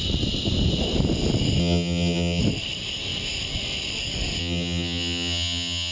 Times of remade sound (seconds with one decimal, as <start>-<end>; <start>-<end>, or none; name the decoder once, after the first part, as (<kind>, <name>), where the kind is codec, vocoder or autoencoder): 1.6-2.4 (vocoder, HiFi-GAN); 4.4-5.9